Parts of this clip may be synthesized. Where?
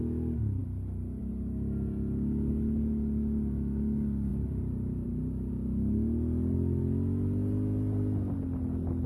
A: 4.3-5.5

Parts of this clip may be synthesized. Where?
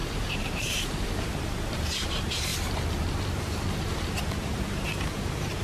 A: 0.0-2.5; 3.7-5.6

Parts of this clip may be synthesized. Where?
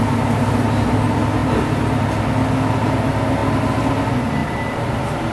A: 1.4-2.0; 4.4-5.3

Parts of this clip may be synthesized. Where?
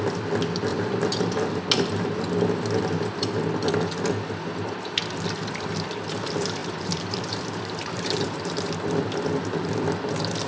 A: 0.7-2.2; 6.6-8.6